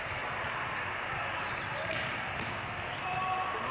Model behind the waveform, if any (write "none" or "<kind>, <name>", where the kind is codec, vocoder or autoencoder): none